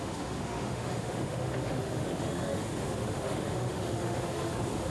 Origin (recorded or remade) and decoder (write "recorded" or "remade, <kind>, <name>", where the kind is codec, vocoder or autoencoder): remade, autoencoder, DAC-VAE